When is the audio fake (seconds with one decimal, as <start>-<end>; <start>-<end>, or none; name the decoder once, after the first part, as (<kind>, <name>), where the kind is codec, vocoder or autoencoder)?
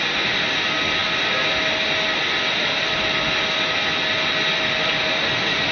none